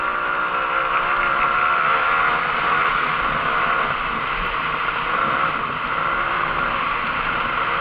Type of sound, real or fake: real